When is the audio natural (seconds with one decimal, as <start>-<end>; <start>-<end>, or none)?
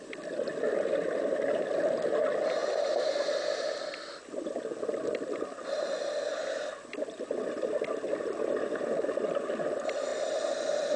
0.0-11.0